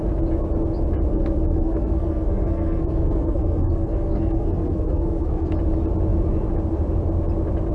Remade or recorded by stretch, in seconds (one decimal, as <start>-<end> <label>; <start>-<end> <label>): 0.0-1.1 recorded; 1.1-5.5 remade; 5.5-7.7 recorded